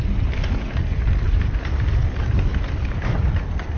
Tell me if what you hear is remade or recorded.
recorded